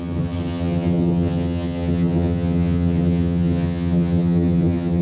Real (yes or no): no